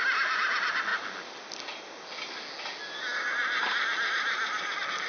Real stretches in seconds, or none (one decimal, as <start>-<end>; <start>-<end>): 0.0-5.1